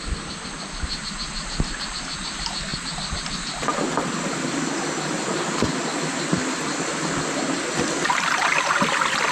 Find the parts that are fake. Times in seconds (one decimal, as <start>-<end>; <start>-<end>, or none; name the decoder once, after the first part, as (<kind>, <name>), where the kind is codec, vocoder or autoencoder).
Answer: none